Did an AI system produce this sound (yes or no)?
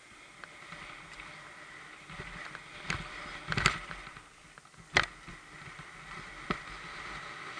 no